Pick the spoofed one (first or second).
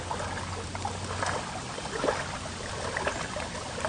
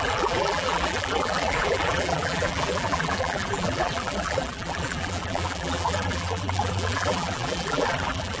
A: second